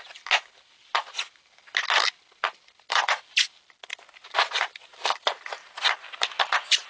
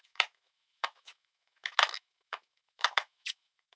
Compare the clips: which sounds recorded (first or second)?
first